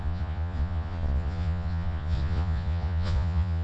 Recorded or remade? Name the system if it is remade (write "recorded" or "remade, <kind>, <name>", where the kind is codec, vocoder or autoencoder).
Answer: remade, vocoder, Vocos